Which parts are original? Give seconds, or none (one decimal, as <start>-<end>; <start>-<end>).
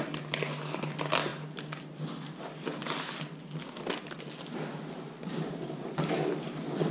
0.0-6.9